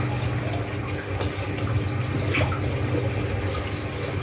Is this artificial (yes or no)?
no